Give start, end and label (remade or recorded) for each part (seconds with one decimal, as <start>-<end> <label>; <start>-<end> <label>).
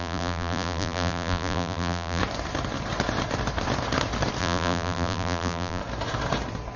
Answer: 0.0-2.2 remade; 2.2-4.4 recorded; 4.4-5.8 remade; 5.8-6.8 recorded